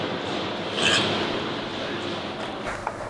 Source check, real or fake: real